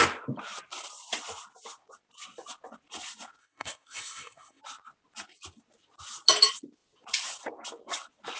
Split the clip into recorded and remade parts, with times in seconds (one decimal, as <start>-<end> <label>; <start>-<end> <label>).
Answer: 0.0-3.4 recorded; 3.4-4.6 remade; 4.6-8.4 recorded